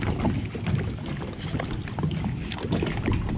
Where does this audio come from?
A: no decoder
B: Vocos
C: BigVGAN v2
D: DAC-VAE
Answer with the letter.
A